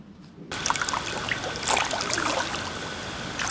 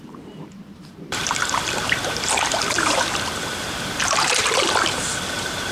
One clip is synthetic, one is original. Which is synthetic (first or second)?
second